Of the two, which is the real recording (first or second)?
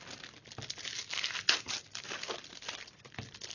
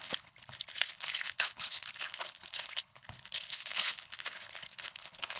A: first